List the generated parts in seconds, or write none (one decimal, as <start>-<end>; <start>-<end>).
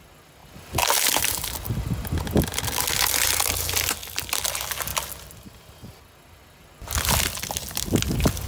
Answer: none